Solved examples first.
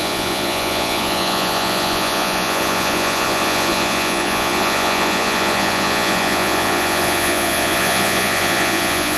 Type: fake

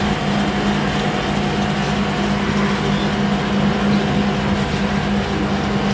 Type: real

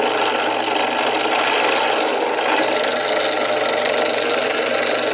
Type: real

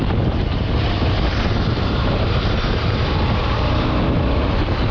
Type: fake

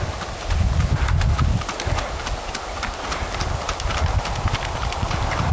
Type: real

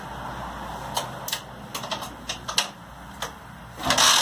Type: real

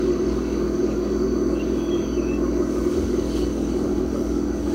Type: fake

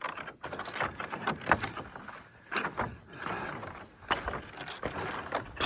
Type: real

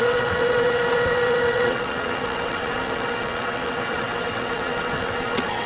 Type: fake